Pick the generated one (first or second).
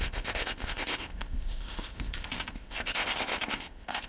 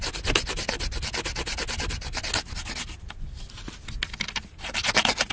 first